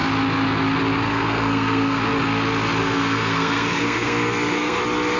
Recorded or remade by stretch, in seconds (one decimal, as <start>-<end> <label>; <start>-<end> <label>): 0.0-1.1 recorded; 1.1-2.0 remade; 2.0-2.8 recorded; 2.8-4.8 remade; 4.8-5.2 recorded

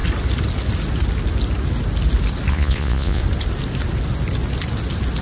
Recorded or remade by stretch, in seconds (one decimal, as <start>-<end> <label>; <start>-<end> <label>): 0.0-2.5 recorded; 2.5-3.2 remade; 3.2-5.2 recorded

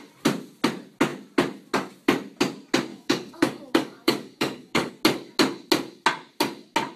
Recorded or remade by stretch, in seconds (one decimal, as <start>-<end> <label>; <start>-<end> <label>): 0.0-2.9 recorded; 2.9-4.9 remade; 4.9-7.0 recorded

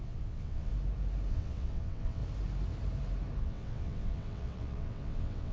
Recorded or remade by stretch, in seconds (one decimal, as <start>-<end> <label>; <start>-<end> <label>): 0.0-0.7 remade; 0.7-1.3 recorded; 1.3-2.2 remade; 2.2-3.4 recorded; 3.4-5.5 remade